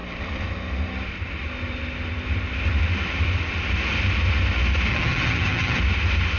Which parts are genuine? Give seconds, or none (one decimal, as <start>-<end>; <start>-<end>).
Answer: 0.0-4.9; 5.8-6.4